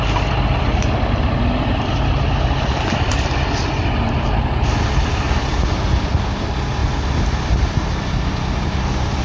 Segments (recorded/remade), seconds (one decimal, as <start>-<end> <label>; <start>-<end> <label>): 0.0-9.2 recorded